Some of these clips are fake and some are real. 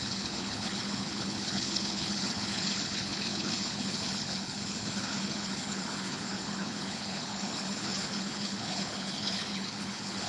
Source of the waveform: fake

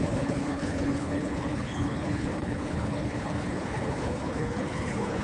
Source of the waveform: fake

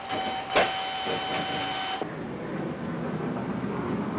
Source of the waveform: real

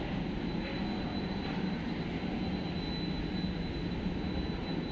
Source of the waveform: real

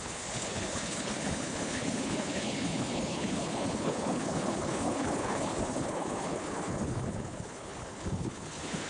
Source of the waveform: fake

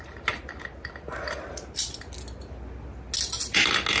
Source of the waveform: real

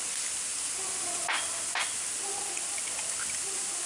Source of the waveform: real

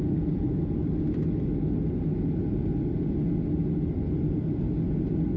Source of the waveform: real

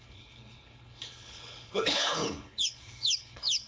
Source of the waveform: fake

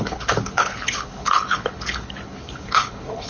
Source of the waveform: fake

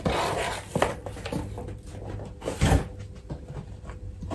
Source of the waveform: real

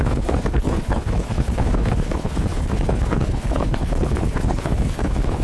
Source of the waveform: fake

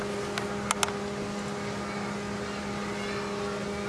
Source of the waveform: real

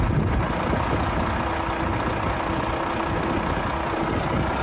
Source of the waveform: real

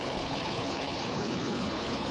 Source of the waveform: fake